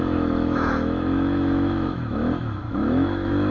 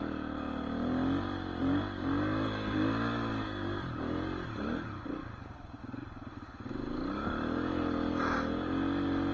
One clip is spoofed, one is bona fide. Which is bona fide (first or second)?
second